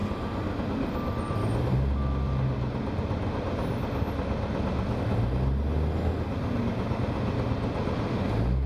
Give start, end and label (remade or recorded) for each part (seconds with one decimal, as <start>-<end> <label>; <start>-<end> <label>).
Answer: 0.0-8.7 recorded